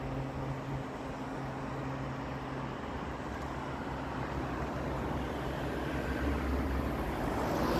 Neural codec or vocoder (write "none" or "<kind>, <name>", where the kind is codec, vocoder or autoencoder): none